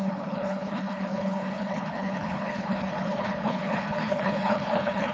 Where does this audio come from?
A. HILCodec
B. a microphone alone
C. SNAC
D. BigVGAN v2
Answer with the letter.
A